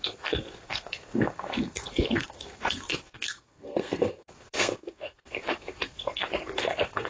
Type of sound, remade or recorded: remade